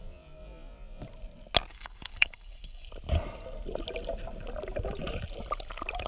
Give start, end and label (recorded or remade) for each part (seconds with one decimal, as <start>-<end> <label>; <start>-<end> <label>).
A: 0.0-1.7 recorded; 1.7-2.9 remade; 2.9-6.1 recorded